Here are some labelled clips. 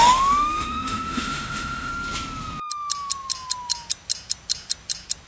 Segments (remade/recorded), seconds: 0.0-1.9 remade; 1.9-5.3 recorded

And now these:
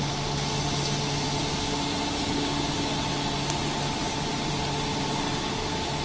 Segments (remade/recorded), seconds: 0.0-6.0 recorded

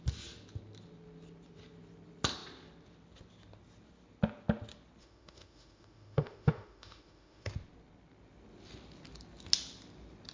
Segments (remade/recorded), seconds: 0.0-5.0 recorded; 5.0-7.5 remade; 7.5-10.3 recorded

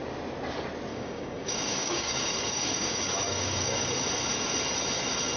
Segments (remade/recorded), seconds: 0.0-0.9 recorded; 0.9-3.8 remade; 3.8-5.4 recorded

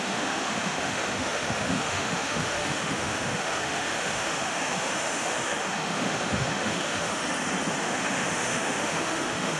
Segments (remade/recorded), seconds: 0.0-7.2 remade; 7.2-7.8 recorded; 7.8-9.6 remade

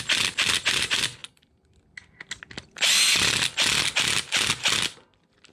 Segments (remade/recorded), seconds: 0.0-5.5 recorded